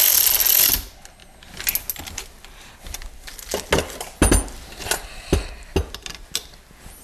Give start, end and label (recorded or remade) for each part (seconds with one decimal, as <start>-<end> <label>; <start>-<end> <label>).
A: 0.0-7.0 recorded